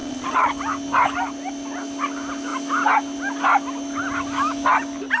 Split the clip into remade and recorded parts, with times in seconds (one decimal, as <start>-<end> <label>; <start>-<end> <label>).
0.0-0.5 remade; 0.5-5.2 recorded